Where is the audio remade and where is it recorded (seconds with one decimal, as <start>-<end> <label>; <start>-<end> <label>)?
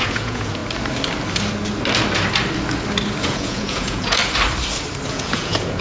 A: 0.0-0.6 remade; 0.6-3.2 recorded; 3.2-4.2 remade; 4.2-5.1 recorded; 5.1-5.8 remade